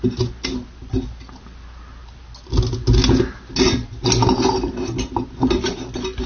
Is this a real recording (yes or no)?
yes